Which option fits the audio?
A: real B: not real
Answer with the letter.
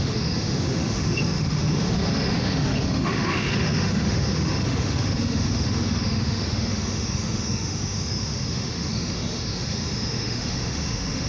B